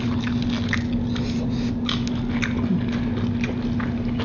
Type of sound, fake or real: real